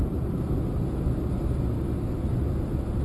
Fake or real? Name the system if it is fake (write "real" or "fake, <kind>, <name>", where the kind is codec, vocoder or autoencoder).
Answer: real